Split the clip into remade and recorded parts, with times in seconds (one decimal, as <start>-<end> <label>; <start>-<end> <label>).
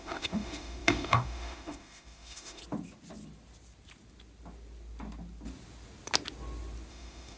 0.0-2.6 remade; 2.6-6.9 recorded; 6.9-7.4 remade